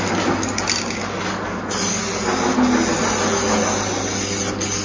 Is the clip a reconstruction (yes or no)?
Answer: no